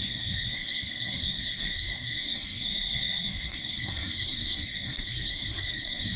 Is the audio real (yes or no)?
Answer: no